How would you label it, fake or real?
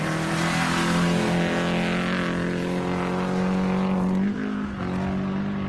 real